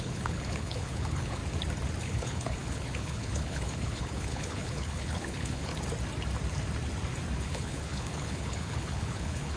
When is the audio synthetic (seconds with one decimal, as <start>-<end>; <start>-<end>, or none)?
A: 0.0-1.4; 2.0-5.7; 7.4-9.6